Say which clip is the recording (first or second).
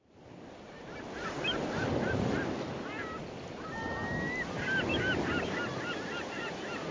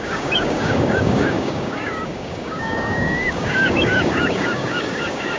first